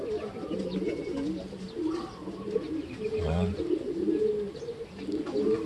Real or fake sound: real